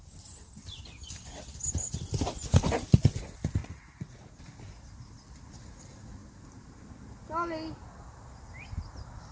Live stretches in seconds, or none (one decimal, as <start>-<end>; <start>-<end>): 0.0-3.6; 4.4-9.3